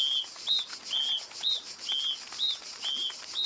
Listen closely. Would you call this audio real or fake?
real